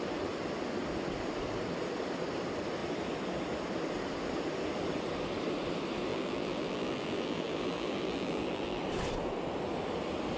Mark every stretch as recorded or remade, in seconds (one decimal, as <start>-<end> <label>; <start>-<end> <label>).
0.0-6.1 recorded; 6.1-8.8 remade; 8.8-10.4 recorded